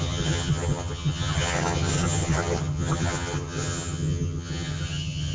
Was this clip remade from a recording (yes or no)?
yes